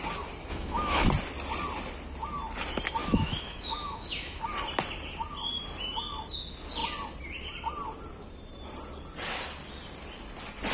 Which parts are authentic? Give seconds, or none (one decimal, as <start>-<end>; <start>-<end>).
0.0-0.5; 1.1-3.0; 4.4-10.7